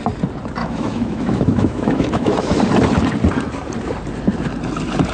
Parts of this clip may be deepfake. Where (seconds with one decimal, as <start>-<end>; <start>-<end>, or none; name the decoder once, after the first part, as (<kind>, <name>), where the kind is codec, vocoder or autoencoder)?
0.6-2.6 (autoencoder, DAC-VAE)